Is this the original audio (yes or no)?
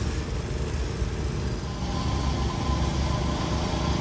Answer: yes